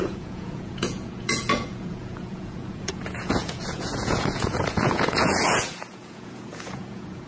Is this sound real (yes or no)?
no